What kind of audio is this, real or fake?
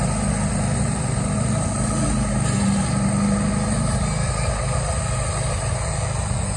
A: real